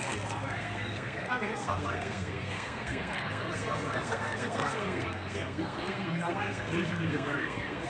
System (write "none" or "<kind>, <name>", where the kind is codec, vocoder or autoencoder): codec, SNAC